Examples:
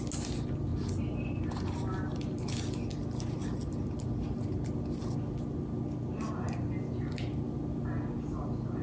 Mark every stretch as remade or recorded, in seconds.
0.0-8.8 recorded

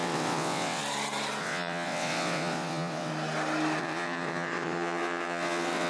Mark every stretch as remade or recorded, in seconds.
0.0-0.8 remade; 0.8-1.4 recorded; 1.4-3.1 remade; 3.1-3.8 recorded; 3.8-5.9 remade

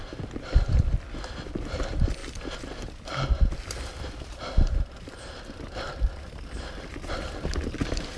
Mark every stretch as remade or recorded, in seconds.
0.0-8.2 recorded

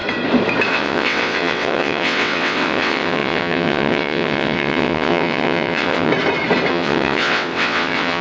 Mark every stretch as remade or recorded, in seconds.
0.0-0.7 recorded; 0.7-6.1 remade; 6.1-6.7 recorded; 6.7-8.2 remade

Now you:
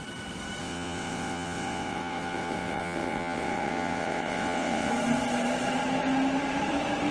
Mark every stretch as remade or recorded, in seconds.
0.0-0.6 recorded; 0.6-4.9 remade; 4.9-7.1 recorded